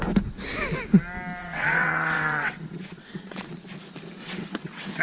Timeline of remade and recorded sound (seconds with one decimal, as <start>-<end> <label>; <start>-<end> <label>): 0.0-1.4 recorded; 1.4-3.5 remade; 3.5-4.2 recorded; 4.2-5.0 remade